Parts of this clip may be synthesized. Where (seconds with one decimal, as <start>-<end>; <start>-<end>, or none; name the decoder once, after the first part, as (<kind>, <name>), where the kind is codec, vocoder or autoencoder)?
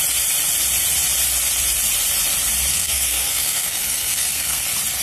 2.7-4.6 (codec, SNAC)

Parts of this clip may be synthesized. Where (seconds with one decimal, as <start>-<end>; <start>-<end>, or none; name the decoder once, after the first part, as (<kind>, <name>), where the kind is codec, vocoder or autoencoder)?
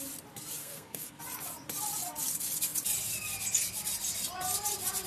0.6-1.2 (codec, SNAC)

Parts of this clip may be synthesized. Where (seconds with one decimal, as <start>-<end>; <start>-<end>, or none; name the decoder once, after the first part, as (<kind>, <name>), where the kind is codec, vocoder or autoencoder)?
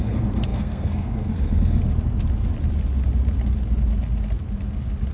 0.0-1.8 (codec, SNAC)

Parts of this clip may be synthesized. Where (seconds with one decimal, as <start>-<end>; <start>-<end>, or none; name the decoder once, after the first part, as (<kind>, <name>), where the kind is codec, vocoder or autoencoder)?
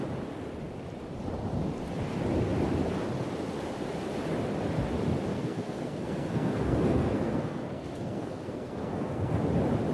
5.3-9.3 (codec, SNAC)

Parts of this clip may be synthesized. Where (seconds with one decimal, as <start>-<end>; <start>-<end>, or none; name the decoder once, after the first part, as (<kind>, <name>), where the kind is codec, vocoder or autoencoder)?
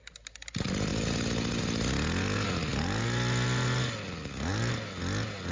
none